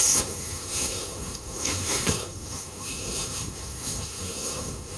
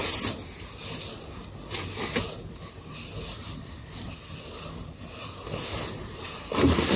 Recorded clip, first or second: second